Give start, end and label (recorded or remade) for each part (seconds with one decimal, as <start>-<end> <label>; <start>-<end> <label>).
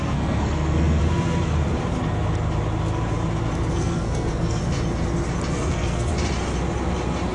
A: 0.0-1.0 remade; 1.0-3.7 recorded; 3.7-4.6 remade; 4.6-5.5 recorded; 5.5-6.1 remade; 6.1-7.3 recorded